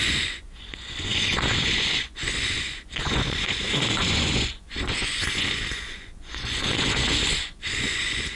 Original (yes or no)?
no